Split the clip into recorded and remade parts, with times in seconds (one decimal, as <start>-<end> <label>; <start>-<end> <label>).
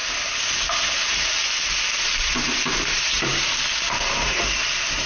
0.0-0.6 recorded; 0.6-1.4 remade; 1.4-2.0 recorded; 2.0-5.1 remade